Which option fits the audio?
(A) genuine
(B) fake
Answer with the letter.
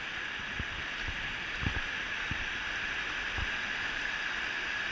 A